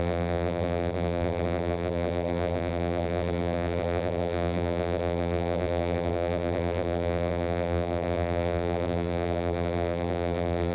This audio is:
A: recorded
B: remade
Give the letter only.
B